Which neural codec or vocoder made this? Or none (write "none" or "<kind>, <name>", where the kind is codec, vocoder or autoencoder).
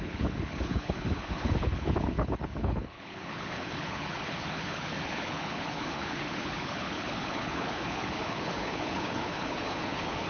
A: codec, HILCodec